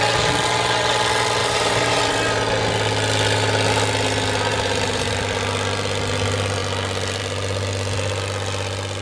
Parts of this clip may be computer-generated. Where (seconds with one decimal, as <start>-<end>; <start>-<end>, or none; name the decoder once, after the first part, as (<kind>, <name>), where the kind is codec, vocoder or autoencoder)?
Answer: 1.4-2.0 (vocoder, BigVGAN v2); 4.5-5.1